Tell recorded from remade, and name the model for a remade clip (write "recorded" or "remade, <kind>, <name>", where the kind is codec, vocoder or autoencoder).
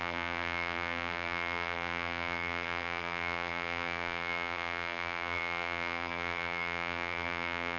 remade, vocoder, BigVGAN v2